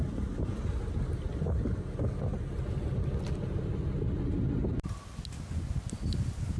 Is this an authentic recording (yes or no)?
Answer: yes